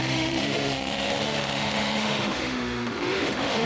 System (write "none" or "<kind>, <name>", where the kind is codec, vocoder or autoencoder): autoencoder, DAC-VAE